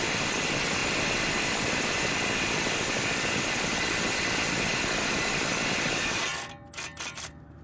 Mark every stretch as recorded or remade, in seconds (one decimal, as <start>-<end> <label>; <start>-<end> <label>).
0.0-6.3 remade; 6.3-7.0 recorded; 7.0-7.6 remade